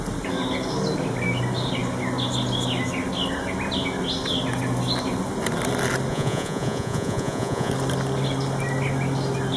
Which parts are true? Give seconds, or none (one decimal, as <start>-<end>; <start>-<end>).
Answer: 0.0-6.1; 7.7-9.6